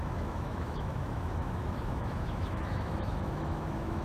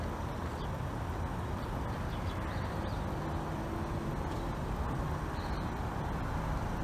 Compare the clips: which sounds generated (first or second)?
first